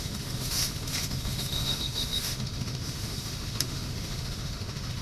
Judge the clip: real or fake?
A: fake